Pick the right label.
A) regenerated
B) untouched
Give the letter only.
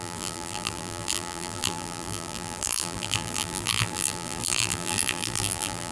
A